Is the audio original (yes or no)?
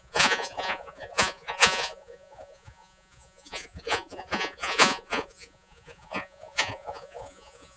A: no